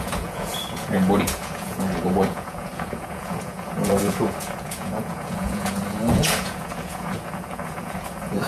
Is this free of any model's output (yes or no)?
no